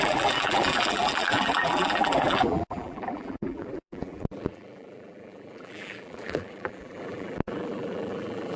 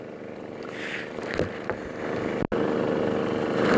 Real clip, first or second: second